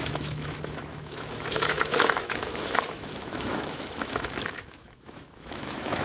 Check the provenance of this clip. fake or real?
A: fake